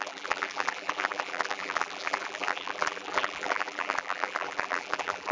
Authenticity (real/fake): fake